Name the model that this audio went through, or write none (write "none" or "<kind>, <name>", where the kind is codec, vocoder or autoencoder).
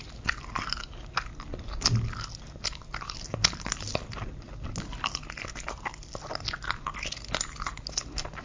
none